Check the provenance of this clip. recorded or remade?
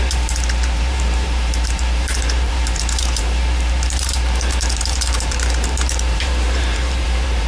remade